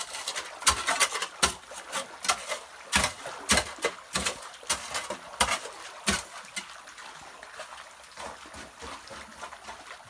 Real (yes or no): yes